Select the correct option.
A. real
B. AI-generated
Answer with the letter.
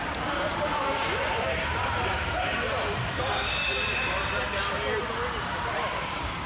B